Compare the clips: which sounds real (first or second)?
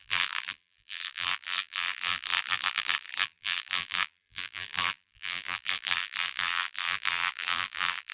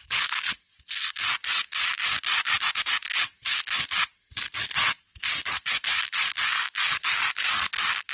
second